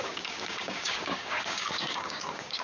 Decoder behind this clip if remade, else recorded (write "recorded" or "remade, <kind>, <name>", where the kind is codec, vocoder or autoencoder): remade, codec, DAC